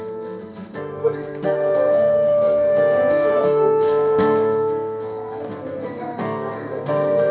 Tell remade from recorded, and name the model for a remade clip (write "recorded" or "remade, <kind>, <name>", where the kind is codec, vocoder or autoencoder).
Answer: remade, codec, SNAC